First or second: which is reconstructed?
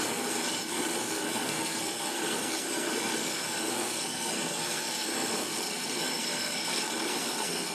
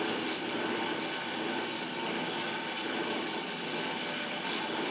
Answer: first